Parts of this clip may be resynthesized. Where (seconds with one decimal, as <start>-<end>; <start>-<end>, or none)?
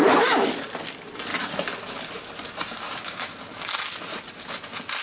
none